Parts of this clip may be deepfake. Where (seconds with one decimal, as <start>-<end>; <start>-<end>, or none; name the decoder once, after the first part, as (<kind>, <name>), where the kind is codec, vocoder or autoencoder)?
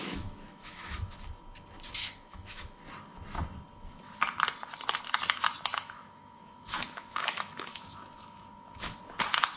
0.0-1.1 (autoencoder, DAC-VAE); 2.0-2.8; 5.7-9.0